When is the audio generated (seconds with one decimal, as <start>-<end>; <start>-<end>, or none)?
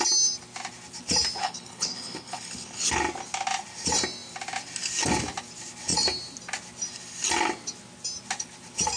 1.4-3.0